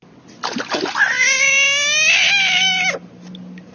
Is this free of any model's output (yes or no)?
yes